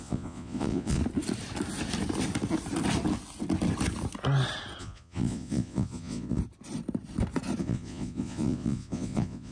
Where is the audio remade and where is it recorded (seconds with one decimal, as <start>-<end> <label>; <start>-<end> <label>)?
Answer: 0.0-1.0 remade; 1.0-4.8 recorded; 4.8-6.4 remade; 6.4-7.6 recorded; 7.6-9.5 remade